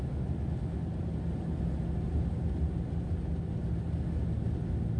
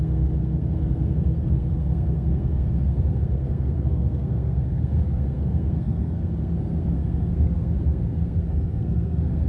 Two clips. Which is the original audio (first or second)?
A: first